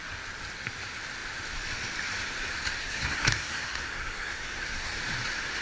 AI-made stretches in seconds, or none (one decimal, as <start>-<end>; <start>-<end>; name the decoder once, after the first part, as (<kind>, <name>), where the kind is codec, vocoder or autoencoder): 2.8-5.0 (codec, SNAC)